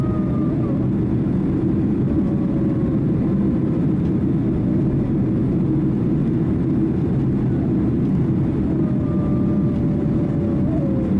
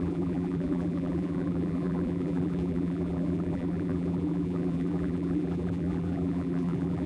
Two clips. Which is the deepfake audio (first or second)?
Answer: second